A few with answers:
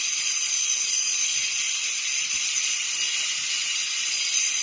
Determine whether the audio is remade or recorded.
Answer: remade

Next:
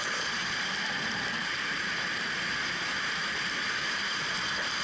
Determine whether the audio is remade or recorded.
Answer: recorded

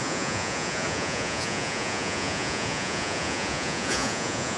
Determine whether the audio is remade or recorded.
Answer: remade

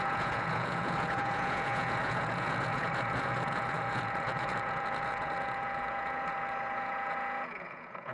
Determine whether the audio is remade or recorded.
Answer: remade